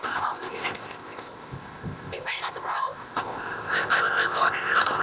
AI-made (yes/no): yes